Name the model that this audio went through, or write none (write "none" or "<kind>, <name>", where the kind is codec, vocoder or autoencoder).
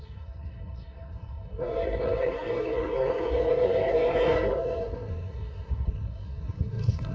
codec, SNAC